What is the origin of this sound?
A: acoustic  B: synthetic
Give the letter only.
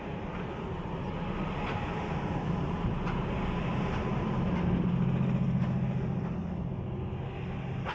A